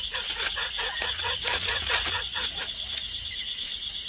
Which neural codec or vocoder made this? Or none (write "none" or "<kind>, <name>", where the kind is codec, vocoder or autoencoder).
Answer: vocoder, Vocos